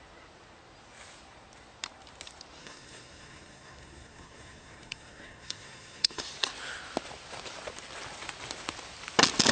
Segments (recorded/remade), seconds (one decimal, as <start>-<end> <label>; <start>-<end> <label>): 0.0-2.6 recorded; 2.6-6.2 remade; 6.2-9.5 recorded